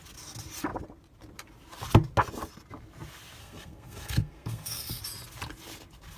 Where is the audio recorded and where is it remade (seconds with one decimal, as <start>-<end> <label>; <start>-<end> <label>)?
0.0-3.4 recorded; 3.4-5.0 remade; 5.0-6.2 recorded